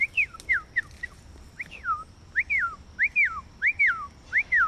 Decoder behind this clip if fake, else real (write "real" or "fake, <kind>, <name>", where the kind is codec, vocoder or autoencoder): real